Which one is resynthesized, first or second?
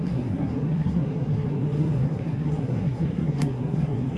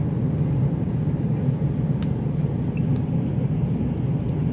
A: first